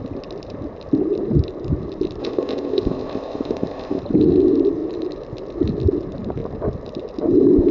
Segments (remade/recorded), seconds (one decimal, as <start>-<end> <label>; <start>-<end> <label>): 0.0-2.2 recorded; 2.2-4.0 remade; 4.0-7.7 recorded